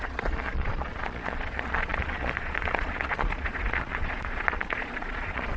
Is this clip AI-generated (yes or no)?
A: yes